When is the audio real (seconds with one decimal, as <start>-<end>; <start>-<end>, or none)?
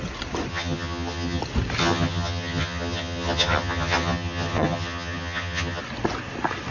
0.0-0.5; 1.4-1.8; 5.8-6.7